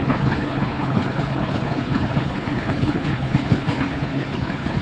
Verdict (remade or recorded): remade